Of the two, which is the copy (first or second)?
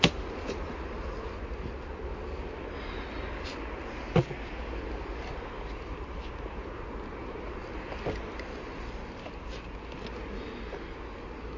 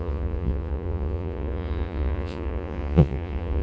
second